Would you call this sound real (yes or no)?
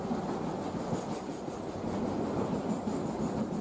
yes